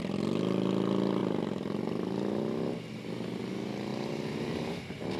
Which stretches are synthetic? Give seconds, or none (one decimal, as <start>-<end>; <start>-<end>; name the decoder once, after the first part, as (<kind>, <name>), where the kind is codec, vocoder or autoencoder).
3.9-4.7 (vocoder, BigVGAN v2)